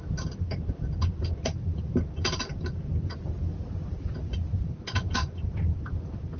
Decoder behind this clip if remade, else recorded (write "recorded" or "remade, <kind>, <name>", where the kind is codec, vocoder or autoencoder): recorded